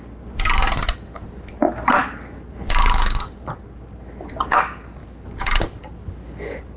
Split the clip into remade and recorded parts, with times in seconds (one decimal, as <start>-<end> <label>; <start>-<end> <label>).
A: 0.0-6.8 recorded